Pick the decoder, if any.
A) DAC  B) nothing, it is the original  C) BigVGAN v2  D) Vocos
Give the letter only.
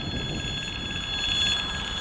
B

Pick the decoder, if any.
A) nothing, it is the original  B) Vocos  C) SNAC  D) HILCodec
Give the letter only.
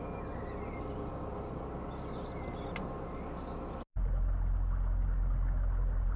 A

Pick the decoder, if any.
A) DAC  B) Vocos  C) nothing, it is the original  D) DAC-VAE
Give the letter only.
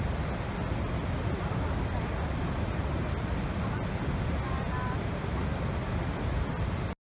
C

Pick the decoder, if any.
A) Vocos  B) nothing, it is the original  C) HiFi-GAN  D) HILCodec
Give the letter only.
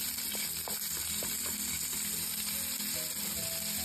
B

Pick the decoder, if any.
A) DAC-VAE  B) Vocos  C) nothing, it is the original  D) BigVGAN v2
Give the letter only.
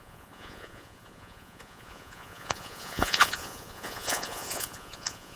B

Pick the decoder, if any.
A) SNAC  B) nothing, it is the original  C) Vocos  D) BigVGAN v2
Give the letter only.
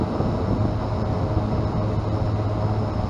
B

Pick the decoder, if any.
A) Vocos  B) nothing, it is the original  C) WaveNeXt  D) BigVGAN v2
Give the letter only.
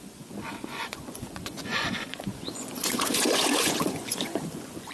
A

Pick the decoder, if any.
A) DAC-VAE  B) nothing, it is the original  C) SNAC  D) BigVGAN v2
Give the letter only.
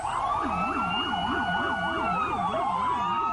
B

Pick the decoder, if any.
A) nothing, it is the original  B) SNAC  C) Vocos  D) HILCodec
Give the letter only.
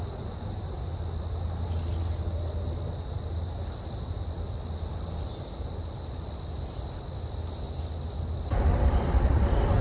A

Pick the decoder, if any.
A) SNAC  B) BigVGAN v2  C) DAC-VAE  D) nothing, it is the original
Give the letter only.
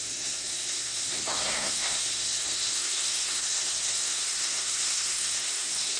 A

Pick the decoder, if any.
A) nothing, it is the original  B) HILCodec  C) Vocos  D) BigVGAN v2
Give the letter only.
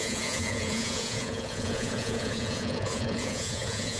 C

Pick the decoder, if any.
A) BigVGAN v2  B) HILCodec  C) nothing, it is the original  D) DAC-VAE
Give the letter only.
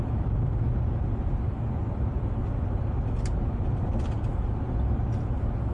C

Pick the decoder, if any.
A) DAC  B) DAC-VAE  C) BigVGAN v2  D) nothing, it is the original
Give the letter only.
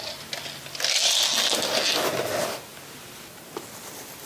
D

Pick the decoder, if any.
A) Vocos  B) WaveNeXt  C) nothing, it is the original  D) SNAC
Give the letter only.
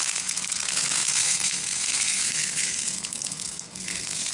D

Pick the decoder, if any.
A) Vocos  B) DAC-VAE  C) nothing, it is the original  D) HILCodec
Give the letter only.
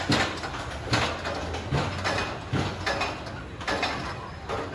C